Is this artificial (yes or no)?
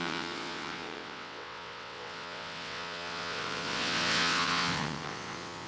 yes